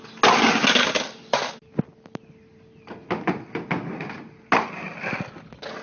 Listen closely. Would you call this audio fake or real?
real